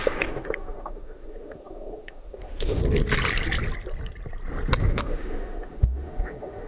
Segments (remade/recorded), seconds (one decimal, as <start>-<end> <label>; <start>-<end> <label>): 0.0-2.8 remade; 2.8-4.8 recorded; 4.8-6.7 remade

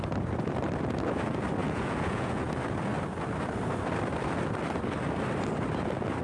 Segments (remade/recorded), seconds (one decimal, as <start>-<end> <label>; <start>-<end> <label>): 0.0-1.6 recorded; 1.6-2.5 remade; 2.5-6.2 recorded

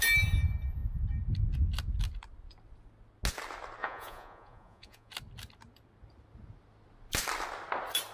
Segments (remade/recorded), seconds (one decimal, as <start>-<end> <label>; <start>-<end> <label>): 0.0-3.8 recorded; 3.8-5.1 remade; 5.1-8.1 recorded

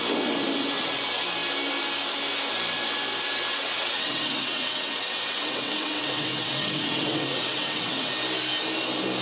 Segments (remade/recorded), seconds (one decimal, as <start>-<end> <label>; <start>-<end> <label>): 0.0-3.5 recorded; 3.5-8.1 remade; 8.1-9.2 recorded

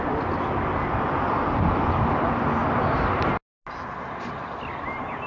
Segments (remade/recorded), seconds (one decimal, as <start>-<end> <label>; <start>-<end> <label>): 0.0-5.3 recorded

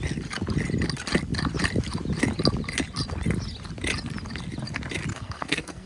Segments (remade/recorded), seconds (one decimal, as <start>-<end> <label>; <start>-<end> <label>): 0.0-5.1 recorded; 5.1-5.9 remade